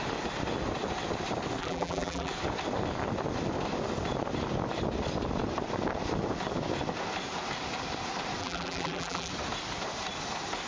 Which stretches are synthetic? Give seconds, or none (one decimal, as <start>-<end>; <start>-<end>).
1.6-2.3; 8.4-9.3